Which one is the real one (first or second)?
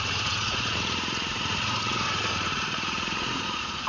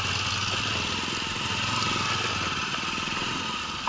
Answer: second